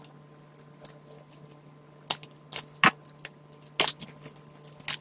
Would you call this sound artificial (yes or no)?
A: no